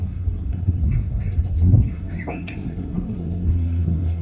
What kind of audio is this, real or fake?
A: fake